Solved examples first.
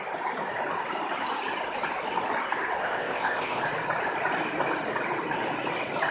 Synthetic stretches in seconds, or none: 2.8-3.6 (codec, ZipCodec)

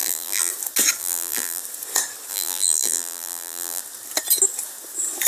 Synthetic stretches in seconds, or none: 0.0-0.5 (vocoder, BigVGAN v2); 1.0-1.6; 2.3-3.8

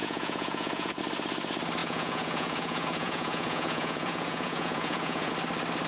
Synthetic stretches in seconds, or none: 0.0-1.0 (vocoder, Vocos); 1.8-5.3